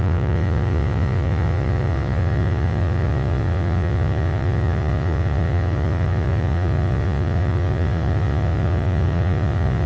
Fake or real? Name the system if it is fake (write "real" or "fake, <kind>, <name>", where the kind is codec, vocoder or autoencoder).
fake, vocoder, Vocos